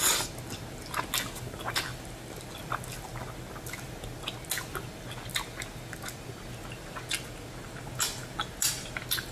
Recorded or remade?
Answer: recorded